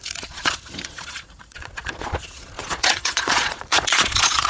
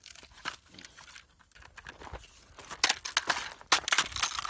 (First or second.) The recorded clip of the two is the second